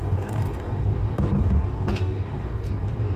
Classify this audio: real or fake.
fake